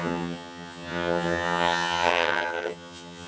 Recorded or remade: remade